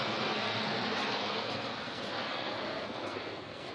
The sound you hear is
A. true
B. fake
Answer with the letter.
B